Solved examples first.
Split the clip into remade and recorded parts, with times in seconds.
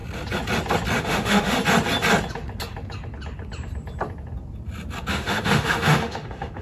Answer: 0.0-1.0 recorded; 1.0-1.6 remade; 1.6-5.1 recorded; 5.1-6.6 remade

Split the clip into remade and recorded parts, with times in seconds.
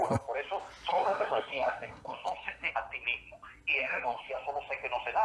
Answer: 0.0-0.9 recorded; 0.9-2.7 remade; 2.7-3.8 recorded; 3.8-4.3 remade; 4.3-5.2 recorded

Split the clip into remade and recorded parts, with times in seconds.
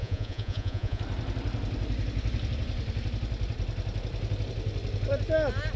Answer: 0.0-1.0 remade; 1.0-5.8 recorded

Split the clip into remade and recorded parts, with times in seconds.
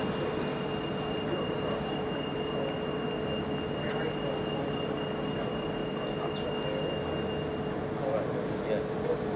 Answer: 0.0-9.4 recorded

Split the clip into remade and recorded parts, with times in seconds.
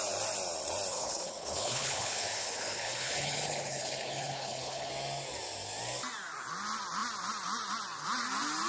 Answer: 0.0-0.9 recorded; 0.9-4.9 remade; 4.9-8.7 recorded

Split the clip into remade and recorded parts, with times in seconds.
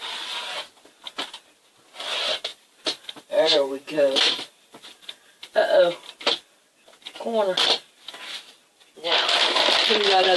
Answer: 0.0-2.5 recorded; 2.5-5.8 remade; 5.8-10.4 recorded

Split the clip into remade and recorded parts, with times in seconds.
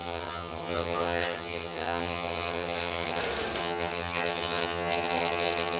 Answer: 0.0-3.2 remade; 3.2-3.6 recorded; 3.6-5.8 remade